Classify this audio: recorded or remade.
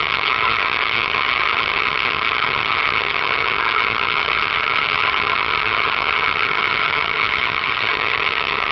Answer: remade